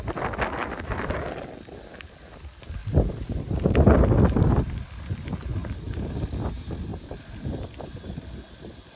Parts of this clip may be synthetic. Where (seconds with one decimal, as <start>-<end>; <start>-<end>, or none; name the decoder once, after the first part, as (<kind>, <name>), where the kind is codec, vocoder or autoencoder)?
0.6-1.2 (vocoder, BigVGAN v2); 2.8-4.0; 5.6-6.1